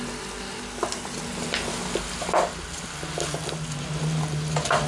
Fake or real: real